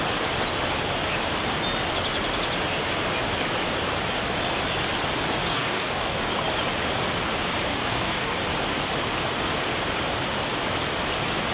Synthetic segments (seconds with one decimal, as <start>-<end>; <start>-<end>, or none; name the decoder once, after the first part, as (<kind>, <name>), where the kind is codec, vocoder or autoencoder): 5.5-6.3 (codec, DAC); 7.7-8.4